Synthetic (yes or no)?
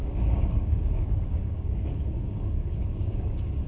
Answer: yes